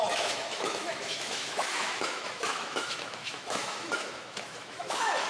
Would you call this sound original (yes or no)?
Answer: no